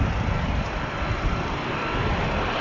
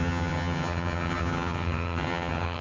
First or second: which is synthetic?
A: second